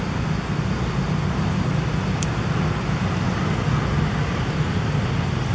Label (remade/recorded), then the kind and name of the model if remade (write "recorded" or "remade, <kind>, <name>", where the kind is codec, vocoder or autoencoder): recorded